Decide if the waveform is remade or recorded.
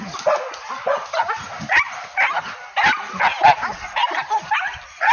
recorded